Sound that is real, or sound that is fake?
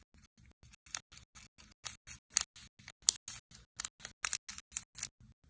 real